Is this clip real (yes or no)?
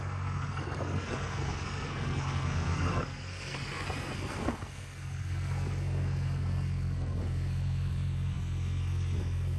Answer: no